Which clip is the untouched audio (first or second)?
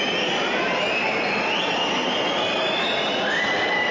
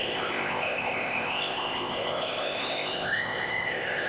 first